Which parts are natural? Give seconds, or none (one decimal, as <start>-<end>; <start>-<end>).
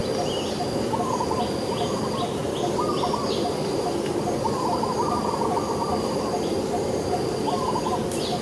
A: 0.0-8.4